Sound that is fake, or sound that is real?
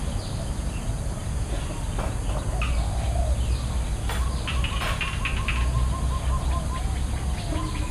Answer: real